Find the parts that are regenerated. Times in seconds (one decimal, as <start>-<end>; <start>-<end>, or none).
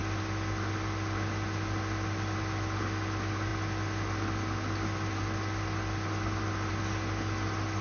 none